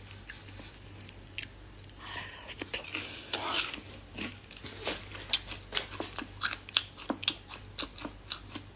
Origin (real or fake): real